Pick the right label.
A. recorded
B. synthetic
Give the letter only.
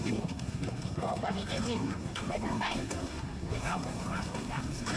B